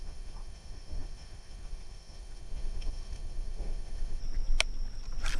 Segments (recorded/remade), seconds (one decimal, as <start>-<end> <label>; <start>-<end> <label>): 0.0-4.2 remade; 4.2-5.4 recorded

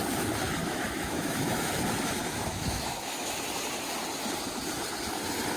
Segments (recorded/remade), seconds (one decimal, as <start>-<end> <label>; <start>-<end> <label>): 0.0-0.6 recorded; 0.6-1.8 remade; 1.8-2.2 recorded; 2.2-3.4 remade; 3.4-5.6 recorded